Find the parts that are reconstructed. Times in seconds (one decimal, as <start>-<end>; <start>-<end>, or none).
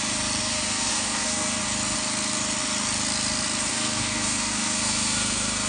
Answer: 0.4-1.6; 3.7-5.7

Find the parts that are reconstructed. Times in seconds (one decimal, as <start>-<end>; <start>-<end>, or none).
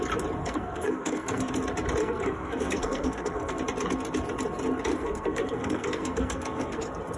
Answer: 0.4-1.5; 2.0-3.6; 4.9-6.8